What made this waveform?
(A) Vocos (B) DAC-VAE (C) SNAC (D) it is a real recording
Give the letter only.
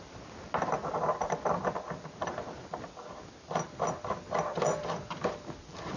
D